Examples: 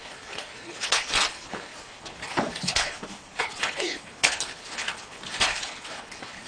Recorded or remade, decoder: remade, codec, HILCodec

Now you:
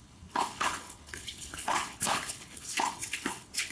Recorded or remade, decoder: remade, codec, HILCodec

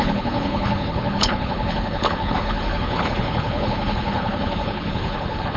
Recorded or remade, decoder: remade, codec, HILCodec